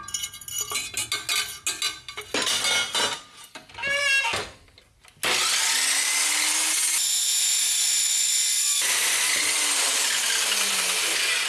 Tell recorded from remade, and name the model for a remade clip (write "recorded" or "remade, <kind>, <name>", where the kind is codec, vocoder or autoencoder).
recorded